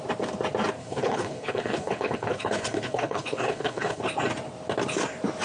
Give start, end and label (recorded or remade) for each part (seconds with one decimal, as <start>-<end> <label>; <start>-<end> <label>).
0.0-0.8 recorded; 0.8-4.0 remade; 4.0-5.4 recorded